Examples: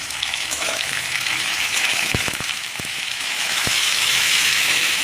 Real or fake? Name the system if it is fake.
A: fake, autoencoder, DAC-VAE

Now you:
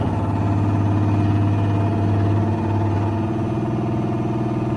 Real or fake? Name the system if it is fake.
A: real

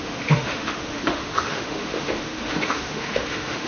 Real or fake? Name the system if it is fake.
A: fake, autoencoder, DAC-VAE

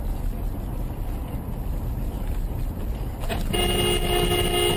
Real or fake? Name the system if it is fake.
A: real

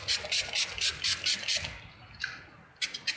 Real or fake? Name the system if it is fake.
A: real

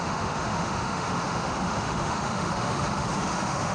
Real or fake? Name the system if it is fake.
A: fake, autoencoder, DAC-VAE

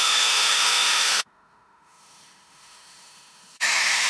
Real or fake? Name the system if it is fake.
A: fake, autoencoder, DAC-VAE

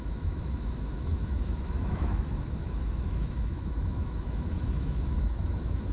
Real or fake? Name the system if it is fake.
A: fake, autoencoder, DAC-VAE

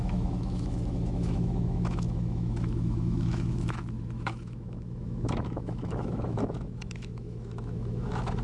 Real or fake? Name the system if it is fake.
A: fake, autoencoder, DAC-VAE